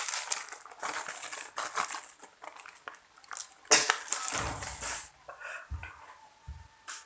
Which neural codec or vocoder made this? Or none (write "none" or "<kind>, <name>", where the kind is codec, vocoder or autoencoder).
none